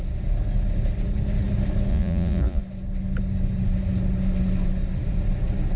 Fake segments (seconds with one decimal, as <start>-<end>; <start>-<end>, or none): 1.9-2.6